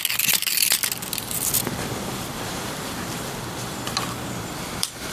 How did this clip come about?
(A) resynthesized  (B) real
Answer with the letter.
A